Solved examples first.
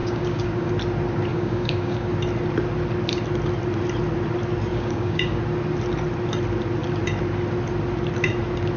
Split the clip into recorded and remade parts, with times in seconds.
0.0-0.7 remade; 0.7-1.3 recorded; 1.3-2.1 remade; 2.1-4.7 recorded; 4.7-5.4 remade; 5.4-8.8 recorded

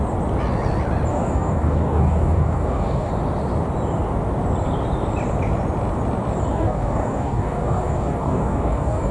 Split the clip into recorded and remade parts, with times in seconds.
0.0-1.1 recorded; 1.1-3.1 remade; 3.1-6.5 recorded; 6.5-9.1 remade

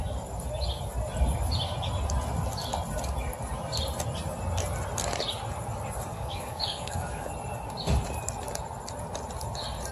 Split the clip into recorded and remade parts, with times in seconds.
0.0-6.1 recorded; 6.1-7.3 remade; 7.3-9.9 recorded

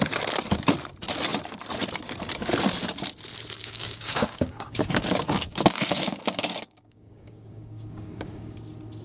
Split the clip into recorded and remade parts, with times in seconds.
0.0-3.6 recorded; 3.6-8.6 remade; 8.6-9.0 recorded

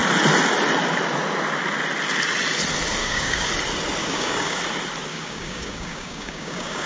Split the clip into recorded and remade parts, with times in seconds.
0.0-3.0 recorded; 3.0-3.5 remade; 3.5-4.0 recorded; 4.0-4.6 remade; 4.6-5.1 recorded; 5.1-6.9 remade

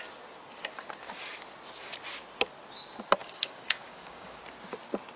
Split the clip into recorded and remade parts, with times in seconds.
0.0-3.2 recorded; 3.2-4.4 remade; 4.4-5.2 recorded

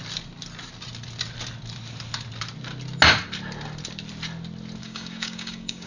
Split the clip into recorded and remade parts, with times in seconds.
0.0-4.8 recorded; 4.8-5.9 remade

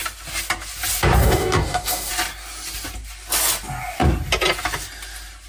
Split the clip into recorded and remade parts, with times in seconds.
0.0-1.2 recorded; 1.2-2.1 remade; 2.1-5.5 recorded